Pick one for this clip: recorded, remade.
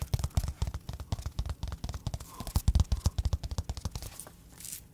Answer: recorded